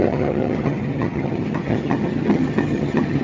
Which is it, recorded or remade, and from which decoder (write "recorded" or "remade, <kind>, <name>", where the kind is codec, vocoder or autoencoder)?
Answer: remade, vocoder, HiFi-GAN